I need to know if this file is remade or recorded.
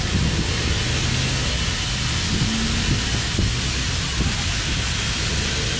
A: recorded